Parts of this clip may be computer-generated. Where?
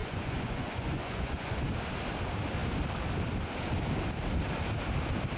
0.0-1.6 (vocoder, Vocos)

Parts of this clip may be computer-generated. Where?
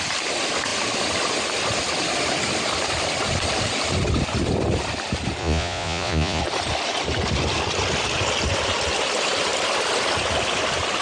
5.4-6.4 (vocoder, Vocos)